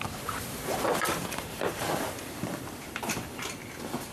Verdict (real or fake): fake